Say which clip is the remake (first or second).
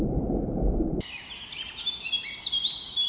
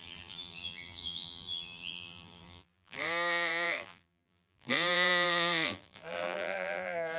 second